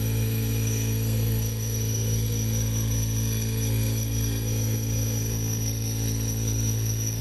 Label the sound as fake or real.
fake